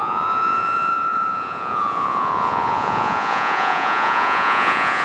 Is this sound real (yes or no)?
no